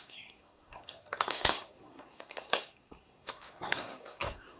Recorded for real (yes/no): no